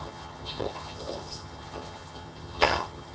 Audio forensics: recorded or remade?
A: remade